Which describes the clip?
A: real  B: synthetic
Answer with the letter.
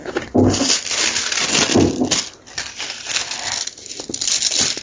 A